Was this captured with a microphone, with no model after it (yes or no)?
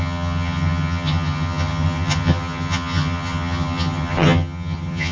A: no